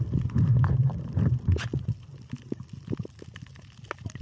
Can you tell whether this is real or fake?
real